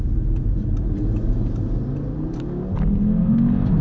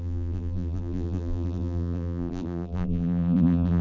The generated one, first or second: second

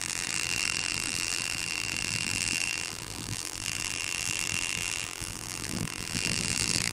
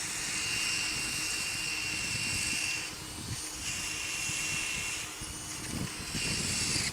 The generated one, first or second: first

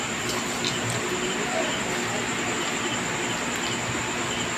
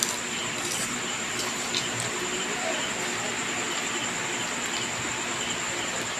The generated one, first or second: second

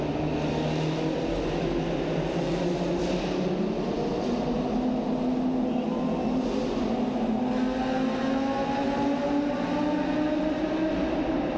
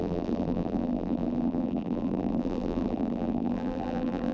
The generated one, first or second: second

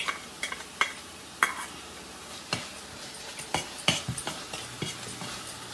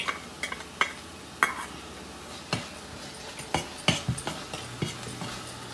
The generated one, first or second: first